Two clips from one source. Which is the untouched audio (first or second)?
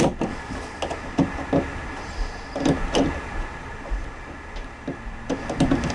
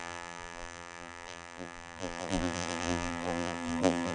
first